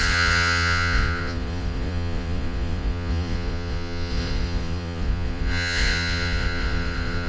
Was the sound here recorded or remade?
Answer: remade